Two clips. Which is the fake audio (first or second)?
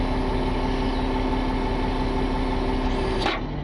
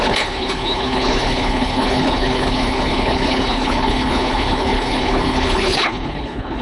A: second